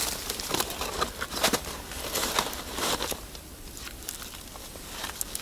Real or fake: real